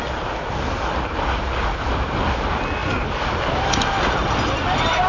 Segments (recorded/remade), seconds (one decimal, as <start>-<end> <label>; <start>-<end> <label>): 0.0-5.1 recorded